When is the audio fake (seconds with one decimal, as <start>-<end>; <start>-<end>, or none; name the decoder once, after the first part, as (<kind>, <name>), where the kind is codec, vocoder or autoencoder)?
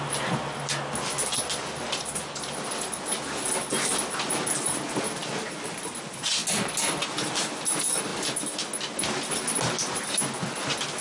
none